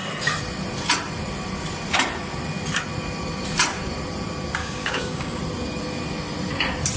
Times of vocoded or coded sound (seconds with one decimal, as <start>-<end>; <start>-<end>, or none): 4.6-5.4